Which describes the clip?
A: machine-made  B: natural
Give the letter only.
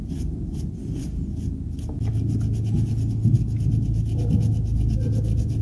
B